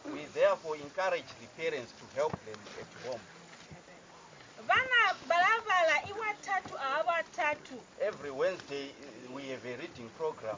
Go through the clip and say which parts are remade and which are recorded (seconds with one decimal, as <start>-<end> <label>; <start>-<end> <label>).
0.0-10.6 recorded